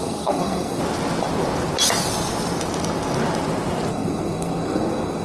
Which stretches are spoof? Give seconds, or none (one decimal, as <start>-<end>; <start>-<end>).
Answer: 0.0-0.8; 3.9-5.2